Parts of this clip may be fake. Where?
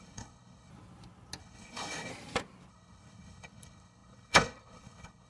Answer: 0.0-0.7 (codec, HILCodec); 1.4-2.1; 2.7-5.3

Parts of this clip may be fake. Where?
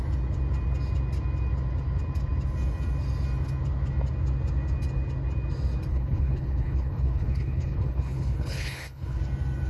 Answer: 5.9-9.2 (codec, HILCodec)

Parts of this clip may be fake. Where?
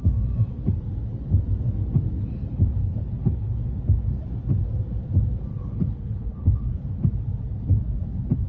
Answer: 2.8-3.6 (codec, HILCodec); 5.5-6.9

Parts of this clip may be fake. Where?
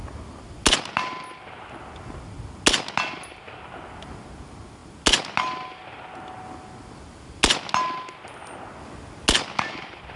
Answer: none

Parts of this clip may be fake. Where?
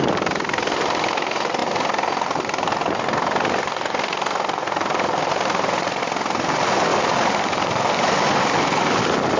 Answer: none